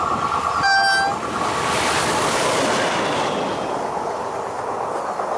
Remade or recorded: recorded